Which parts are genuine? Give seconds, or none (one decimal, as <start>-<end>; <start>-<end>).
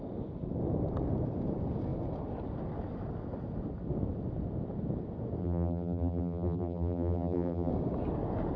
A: 0.0-5.4; 7.7-8.6